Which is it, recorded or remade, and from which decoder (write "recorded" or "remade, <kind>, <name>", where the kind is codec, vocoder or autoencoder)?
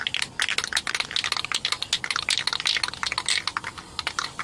recorded